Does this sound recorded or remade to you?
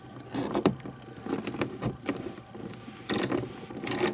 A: recorded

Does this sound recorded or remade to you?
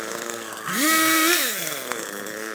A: remade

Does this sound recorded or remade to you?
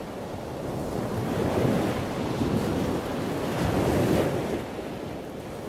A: recorded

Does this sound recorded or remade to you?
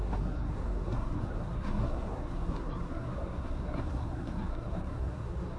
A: remade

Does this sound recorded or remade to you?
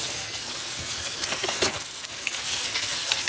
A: remade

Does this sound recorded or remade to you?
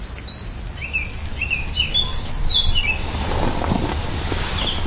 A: recorded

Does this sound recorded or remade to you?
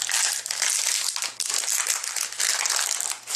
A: recorded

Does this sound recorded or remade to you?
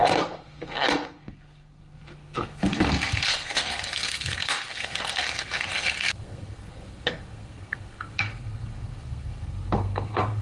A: remade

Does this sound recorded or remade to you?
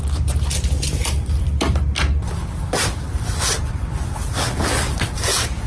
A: remade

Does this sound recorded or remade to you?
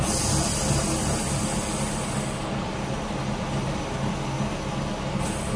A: recorded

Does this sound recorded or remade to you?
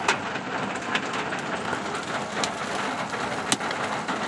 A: recorded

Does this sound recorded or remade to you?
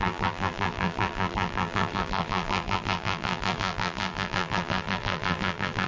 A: remade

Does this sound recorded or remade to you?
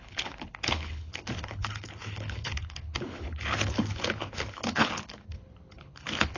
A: remade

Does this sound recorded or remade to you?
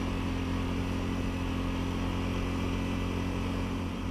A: recorded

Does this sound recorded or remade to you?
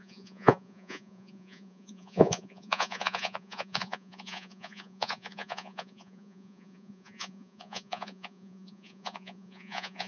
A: remade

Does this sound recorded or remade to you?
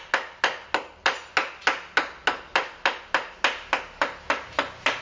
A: recorded